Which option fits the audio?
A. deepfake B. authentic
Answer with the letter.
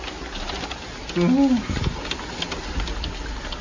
B